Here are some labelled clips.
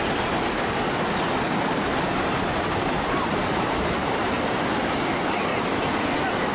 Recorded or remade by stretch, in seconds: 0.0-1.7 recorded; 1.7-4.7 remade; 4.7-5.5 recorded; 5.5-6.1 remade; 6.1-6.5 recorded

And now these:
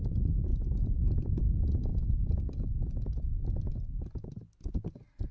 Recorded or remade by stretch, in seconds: 0.0-0.5 recorded; 0.5-1.4 remade; 1.4-1.9 recorded; 1.9-3.7 remade; 3.7-5.3 recorded

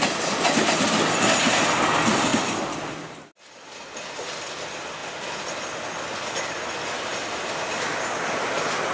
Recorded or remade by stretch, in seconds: 0.0-2.3 recorded; 2.3-3.4 remade; 3.4-8.9 recorded

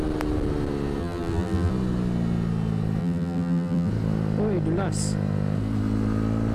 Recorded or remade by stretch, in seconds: 0.0-1.0 recorded; 1.0-1.7 remade; 1.7-3.0 recorded; 3.0-3.9 remade; 3.9-6.5 recorded

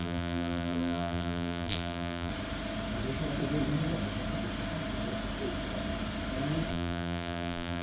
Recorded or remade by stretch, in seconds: 0.0-2.3 remade; 2.3-6.7 recorded; 6.7-7.8 remade